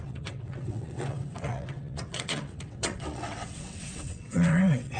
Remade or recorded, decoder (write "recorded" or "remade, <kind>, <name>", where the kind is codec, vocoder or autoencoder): remade, vocoder, WaveNeXt